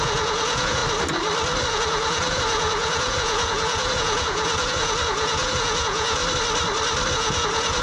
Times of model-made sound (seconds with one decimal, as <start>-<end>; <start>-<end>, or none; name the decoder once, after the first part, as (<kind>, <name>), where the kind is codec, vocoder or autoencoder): 0.0-0.8 (vocoder, Vocos); 1.7-6.2; 7.1-7.8